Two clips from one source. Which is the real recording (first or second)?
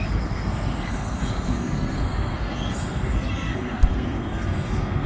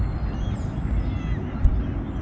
second